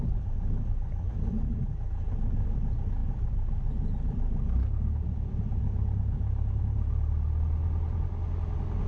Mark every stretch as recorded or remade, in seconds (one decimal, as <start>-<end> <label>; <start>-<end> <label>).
0.0-8.9 recorded